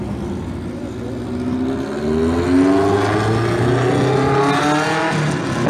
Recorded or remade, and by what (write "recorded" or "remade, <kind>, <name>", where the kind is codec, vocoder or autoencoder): recorded